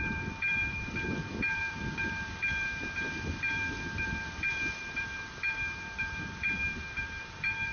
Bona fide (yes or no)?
no